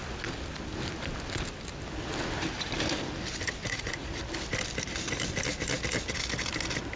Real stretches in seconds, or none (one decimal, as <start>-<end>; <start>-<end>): 0.0-3.6; 4.2-7.0